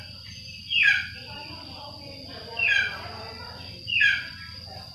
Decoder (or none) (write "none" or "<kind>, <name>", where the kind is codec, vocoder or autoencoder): vocoder, BigVGAN v2